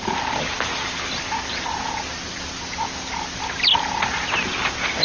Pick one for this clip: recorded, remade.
recorded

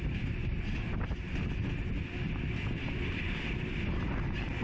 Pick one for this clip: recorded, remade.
recorded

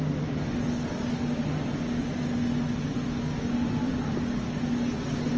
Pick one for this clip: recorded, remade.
recorded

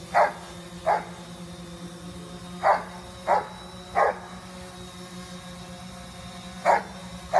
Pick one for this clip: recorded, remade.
recorded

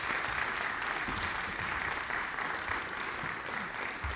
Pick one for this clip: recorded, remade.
recorded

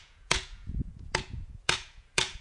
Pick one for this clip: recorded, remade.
remade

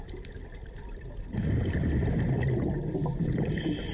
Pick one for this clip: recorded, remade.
recorded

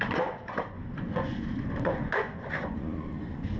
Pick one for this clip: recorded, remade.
remade